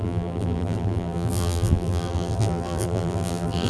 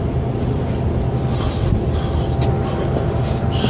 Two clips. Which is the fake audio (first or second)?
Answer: first